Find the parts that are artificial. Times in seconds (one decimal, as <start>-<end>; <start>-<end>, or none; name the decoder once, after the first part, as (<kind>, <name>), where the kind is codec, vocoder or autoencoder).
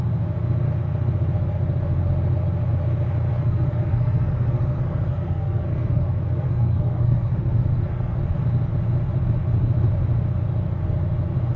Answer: 3.3-8.2 (codec, SNAC)